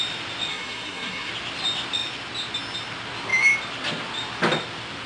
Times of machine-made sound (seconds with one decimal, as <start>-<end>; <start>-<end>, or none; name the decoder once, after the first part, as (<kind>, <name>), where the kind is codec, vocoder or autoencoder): 0.5-1.3 (codec, SNAC)